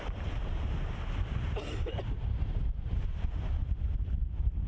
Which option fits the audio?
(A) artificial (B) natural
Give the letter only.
A